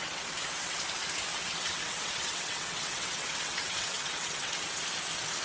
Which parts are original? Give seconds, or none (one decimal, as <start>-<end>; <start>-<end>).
0.8-1.3; 4.5-5.4